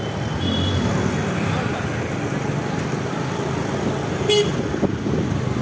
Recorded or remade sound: recorded